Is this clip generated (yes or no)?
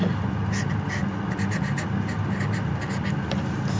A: no